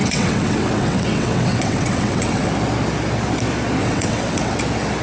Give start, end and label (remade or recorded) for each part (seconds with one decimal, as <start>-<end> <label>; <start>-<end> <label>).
0.0-2.5 remade; 2.5-3.8 recorded; 3.8-4.6 remade; 4.6-5.0 recorded